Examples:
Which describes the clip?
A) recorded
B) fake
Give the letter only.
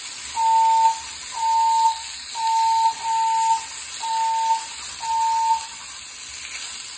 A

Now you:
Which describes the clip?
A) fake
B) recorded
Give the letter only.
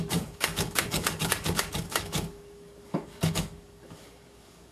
A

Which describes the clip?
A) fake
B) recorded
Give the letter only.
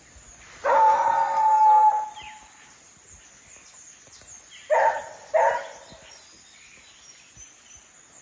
B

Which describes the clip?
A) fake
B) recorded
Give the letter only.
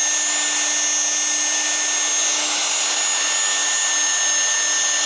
B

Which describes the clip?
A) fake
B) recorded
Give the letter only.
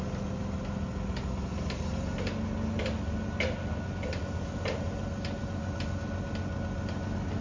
B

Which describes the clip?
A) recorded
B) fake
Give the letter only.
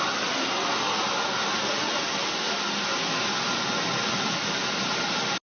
A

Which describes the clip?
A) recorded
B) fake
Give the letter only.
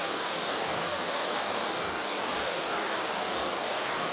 B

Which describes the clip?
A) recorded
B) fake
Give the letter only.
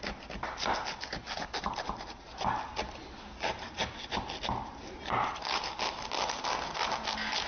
A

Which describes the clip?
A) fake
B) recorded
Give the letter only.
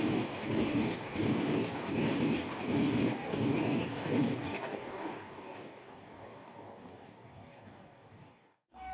A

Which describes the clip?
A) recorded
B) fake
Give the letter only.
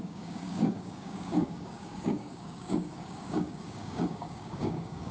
B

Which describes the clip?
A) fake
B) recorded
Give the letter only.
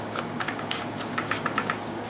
A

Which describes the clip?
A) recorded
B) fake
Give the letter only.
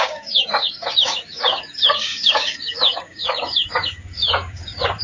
B